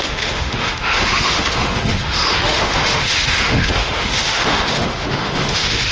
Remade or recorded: remade